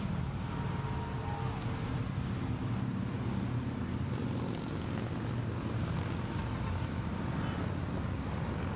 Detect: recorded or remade recorded